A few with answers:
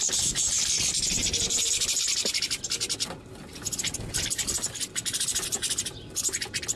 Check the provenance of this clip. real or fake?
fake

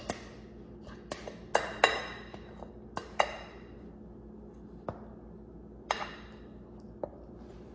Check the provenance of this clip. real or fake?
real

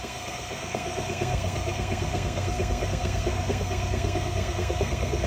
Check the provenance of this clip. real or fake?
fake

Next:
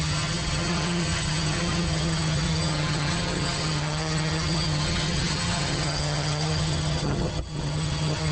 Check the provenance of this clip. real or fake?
fake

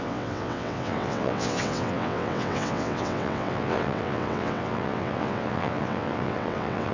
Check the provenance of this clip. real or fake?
fake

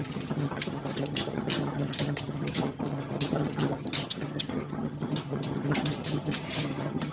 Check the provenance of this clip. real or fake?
fake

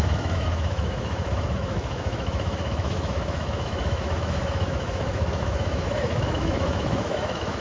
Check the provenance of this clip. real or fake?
fake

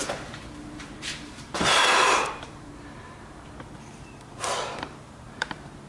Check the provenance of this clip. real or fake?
fake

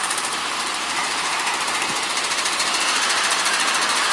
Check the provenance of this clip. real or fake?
fake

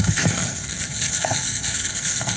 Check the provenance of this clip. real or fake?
fake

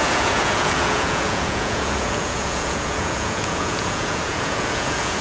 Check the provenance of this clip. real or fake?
fake